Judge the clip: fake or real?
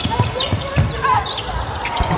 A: real